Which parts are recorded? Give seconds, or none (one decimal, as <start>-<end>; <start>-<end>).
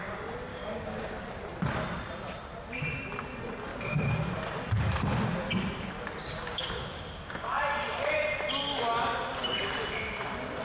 0.0-0.5; 1.3-3.7; 4.3-6.2; 7.6-10.6